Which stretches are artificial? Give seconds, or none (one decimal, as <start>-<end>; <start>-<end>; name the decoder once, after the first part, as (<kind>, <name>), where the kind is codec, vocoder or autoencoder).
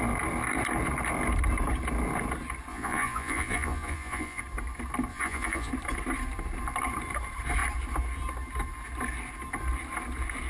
2.7-4.4 (vocoder, Vocos); 5.1-5.7